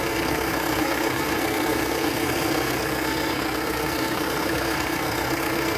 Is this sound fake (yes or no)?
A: yes